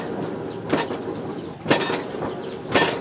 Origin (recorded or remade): recorded